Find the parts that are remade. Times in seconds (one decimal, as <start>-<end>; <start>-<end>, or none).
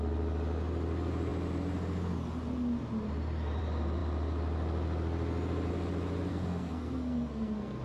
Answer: 6.3-7.8